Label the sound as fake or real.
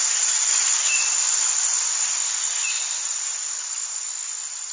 real